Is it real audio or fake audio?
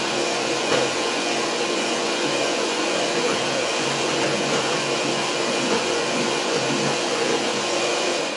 fake